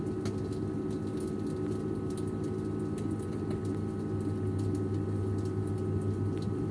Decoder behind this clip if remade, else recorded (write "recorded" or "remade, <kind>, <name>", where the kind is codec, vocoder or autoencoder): recorded